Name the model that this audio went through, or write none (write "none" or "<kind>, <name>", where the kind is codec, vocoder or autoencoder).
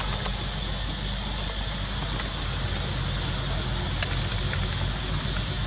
none